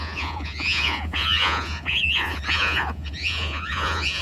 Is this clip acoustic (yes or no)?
no